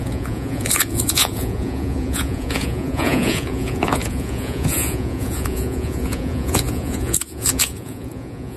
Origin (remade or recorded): remade